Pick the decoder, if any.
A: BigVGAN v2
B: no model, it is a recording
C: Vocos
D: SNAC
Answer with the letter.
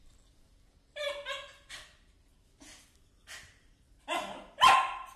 B